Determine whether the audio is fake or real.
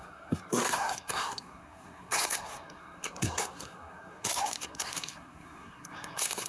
fake